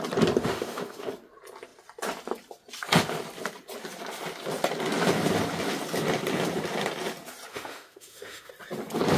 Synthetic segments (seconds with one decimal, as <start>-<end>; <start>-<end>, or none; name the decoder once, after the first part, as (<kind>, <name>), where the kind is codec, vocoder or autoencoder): 0.4-1.1 (autoencoder, DAC-VAE); 7.5-8.5